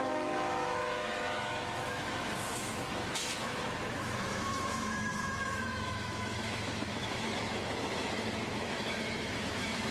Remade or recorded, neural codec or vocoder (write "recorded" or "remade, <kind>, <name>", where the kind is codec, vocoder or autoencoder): remade, autoencoder, DAC-VAE